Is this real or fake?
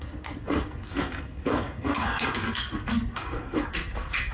fake